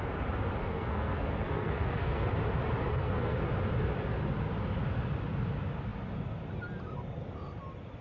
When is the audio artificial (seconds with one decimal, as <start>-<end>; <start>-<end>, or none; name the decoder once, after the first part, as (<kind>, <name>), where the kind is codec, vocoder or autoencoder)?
0.6-2.3 (codec, SNAC); 2.9-3.4

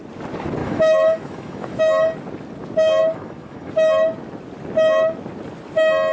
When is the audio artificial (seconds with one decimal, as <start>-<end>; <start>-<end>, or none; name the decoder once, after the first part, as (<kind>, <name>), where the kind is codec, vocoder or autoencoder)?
0.6-1.8 (autoencoder, DAC-VAE); 3.0-3.7